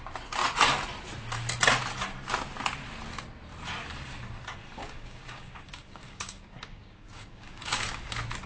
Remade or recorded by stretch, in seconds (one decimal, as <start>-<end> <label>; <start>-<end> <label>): 0.0-4.8 recorded; 4.8-8.1 remade; 8.1-8.5 recorded